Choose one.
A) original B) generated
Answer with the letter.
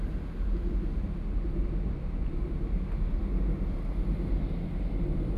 A